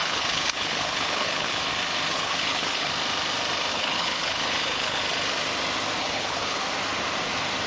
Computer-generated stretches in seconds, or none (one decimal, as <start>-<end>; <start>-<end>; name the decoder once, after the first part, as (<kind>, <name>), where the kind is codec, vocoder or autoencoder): 0.0-1.6 (codec, HILCodec); 2.1-2.9; 3.7-5.0; 6.0-6.6